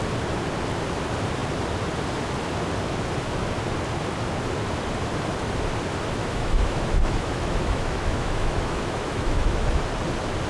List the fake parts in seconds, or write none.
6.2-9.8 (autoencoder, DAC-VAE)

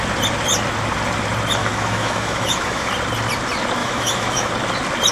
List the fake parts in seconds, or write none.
1.6-2.9 (autoencoder, DAC-VAE); 3.8-4.5

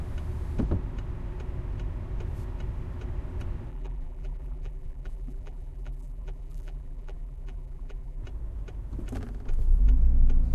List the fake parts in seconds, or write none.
3.7-8.2 (vocoder, BigVGAN v2)

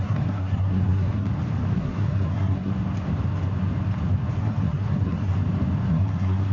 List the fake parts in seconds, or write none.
0.0-1.3 (codec, SNAC); 1.8-2.7; 4.4-5.3; 5.9-6.5

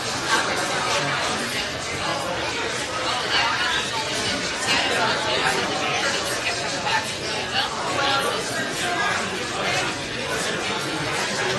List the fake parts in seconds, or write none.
0.0-2.1 (vocoder, Vocos); 4.9-11.6

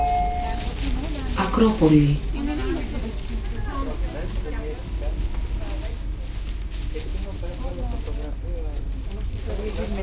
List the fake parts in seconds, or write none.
none

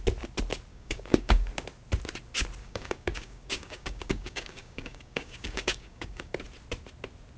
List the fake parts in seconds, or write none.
0.7-1.5 (codec, DAC); 2.6-6.3